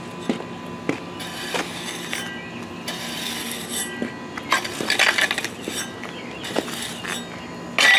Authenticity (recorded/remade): recorded